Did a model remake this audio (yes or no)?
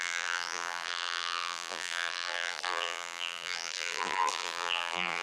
yes